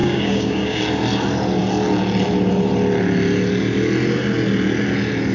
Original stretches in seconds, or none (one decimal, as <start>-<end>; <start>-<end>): 0.8-5.3